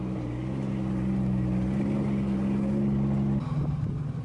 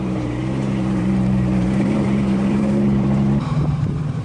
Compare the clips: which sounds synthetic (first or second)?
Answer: second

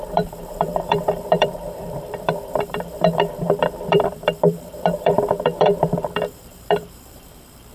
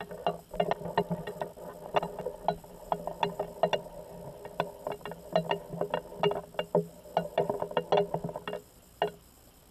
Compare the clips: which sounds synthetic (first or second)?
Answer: first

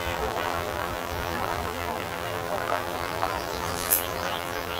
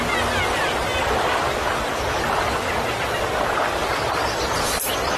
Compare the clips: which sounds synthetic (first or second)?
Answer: first